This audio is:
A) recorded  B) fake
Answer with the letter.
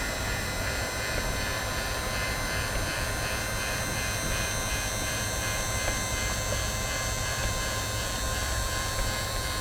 B